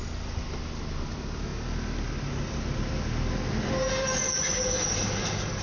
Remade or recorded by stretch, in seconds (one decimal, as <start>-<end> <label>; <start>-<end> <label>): 0.0-5.6 recorded